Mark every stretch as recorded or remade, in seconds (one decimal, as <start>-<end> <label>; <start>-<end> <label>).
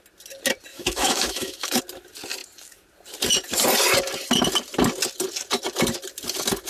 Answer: 0.0-0.7 recorded; 0.7-1.8 remade; 1.8-6.7 recorded